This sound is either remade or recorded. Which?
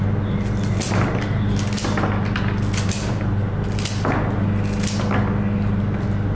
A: recorded